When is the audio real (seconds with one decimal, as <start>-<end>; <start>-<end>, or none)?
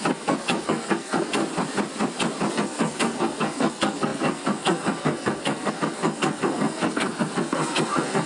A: 1.4-2.5